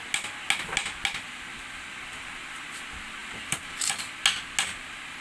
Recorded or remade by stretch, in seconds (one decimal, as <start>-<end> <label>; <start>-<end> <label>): 0.0-3.2 recorded; 3.2-3.9 remade; 3.9-5.2 recorded